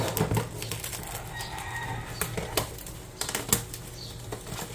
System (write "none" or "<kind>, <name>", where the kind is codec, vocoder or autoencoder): none